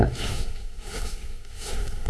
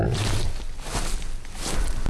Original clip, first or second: second